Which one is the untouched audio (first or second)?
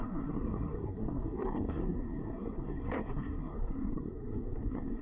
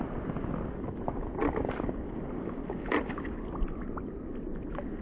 second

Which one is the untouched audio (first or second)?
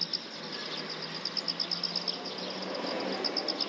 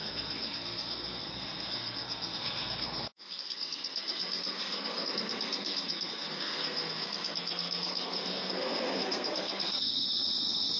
first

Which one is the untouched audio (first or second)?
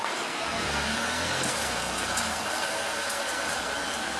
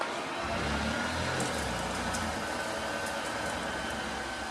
second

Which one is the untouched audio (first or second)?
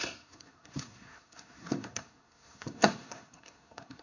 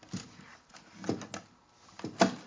second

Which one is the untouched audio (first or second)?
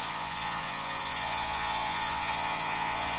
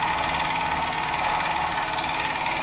second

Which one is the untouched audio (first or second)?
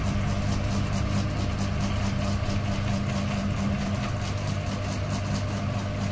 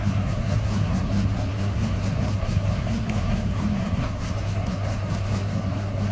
first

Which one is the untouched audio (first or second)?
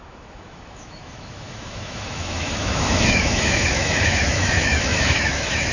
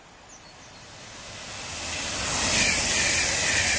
second